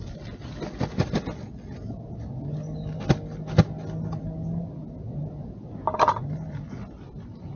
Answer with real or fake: real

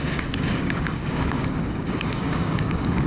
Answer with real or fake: fake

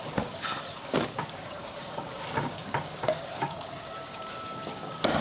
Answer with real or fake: fake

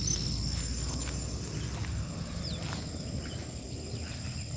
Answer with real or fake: real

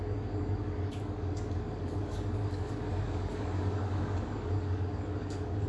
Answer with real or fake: fake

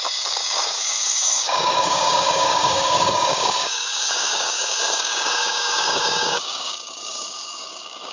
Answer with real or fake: fake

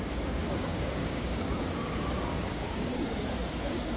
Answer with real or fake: fake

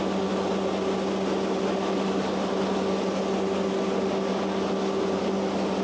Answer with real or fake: real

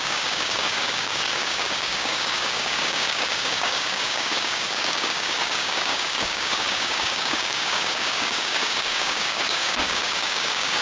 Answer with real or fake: fake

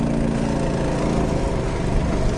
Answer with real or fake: real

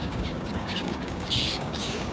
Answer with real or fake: fake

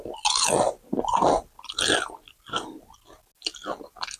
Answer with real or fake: real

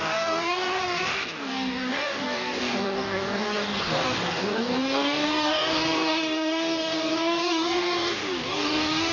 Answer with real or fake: fake